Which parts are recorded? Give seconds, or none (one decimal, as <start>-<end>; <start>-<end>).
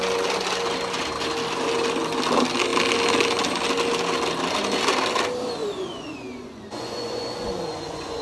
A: 0.0-5.6